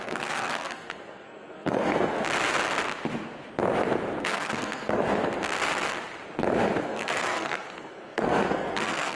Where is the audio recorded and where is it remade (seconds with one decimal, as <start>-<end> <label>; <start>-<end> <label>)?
0.0-2.2 remade; 2.2-4.2 recorded; 4.2-5.0 remade; 5.0-6.8 recorded; 6.8-9.2 remade